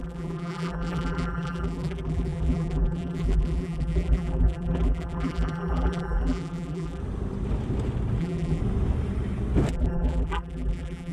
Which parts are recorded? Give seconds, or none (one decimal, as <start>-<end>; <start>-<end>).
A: 7.0-8.2; 8.6-9.7